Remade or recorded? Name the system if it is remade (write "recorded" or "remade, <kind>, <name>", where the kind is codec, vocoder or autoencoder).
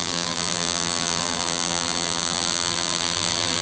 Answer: remade, vocoder, BigVGAN v2